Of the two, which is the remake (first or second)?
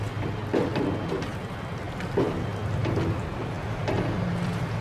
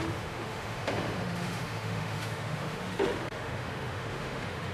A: second